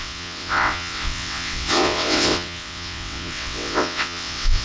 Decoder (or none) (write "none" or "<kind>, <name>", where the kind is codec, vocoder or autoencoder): vocoder, WaveNeXt